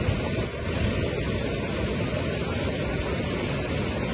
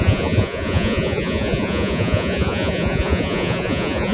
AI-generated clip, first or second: second